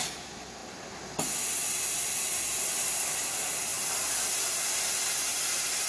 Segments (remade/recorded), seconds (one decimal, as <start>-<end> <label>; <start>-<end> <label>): 0.0-5.9 recorded